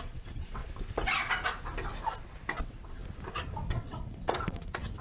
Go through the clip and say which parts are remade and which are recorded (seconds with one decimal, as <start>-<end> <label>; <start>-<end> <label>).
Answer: 0.0-0.6 remade; 0.6-2.6 recorded; 2.6-3.0 remade; 3.0-3.7 recorded; 3.7-5.0 remade